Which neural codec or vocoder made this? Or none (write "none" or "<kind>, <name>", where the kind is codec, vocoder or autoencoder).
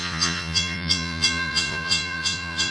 vocoder, Vocos